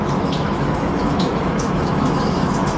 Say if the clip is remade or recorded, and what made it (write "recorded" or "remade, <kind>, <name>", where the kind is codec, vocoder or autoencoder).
remade, autoencoder, DAC-VAE